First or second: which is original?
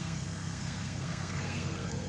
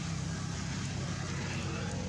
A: second